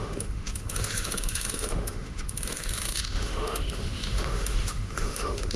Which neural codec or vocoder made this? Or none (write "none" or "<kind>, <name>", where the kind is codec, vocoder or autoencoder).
autoencoder, DAC-VAE